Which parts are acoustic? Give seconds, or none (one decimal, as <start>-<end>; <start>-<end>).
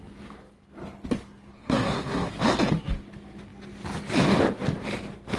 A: 0.0-1.6; 2.3-5.4